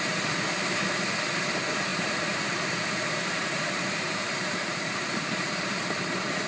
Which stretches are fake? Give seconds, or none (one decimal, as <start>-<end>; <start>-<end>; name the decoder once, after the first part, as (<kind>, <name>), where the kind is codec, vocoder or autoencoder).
1.9-5.8 (vocoder, BigVGAN v2)